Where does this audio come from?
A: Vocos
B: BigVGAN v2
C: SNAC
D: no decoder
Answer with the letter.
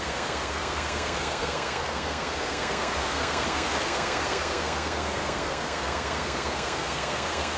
C